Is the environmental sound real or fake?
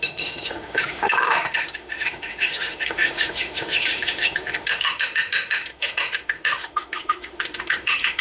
fake